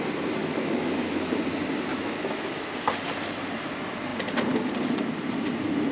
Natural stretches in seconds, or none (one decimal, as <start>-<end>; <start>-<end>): 0.0-0.4; 1.3-1.9; 2.6-5.9